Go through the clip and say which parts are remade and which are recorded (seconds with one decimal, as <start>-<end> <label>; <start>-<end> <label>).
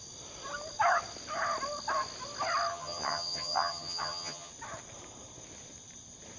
0.0-2.7 recorded; 2.7-4.5 remade; 4.5-6.4 recorded